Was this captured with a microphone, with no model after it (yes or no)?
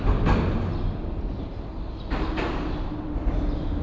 yes